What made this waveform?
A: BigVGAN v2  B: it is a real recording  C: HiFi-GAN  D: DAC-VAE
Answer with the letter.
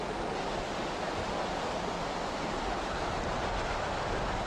B